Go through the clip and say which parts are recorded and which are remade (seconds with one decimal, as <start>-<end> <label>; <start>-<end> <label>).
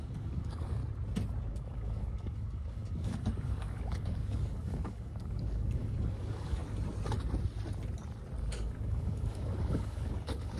0.0-0.8 remade; 0.8-1.5 recorded; 1.5-6.6 remade; 6.6-8.4 recorded; 8.4-10.6 remade